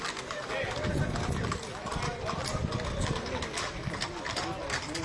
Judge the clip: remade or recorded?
recorded